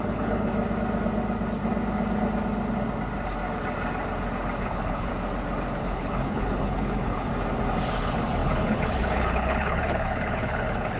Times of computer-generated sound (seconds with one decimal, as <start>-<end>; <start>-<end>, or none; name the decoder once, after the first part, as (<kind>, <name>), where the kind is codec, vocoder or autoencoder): 0.0-0.5 (codec, HILCodec); 4.6-5.1; 5.8-7.3; 7.9-11.0